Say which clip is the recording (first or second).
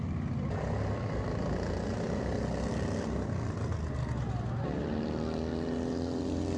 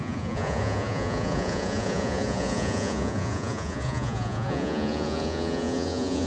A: first